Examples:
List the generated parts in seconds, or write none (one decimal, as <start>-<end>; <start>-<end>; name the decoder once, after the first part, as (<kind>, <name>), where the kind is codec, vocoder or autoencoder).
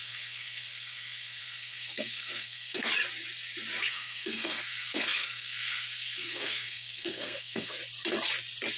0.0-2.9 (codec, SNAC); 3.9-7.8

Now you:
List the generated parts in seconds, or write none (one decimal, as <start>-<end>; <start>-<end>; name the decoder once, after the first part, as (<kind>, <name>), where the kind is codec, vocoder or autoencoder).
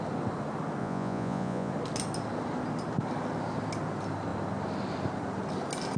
0.8-1.7 (vocoder, Vocos)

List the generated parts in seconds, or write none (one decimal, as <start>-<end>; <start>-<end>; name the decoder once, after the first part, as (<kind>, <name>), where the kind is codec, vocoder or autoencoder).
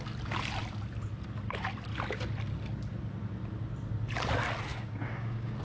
4.7-5.6 (codec, DAC)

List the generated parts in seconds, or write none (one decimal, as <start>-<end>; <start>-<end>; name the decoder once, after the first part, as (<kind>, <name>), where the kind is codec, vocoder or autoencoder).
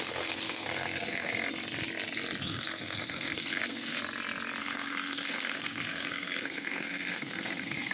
0.0-1.3 (codec, SNAC); 2.4-4.0; 4.6-7.9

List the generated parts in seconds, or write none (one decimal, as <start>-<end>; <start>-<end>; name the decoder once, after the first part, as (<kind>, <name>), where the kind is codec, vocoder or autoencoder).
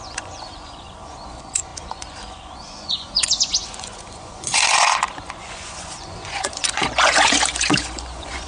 0.0-8.5 (vocoder, Vocos)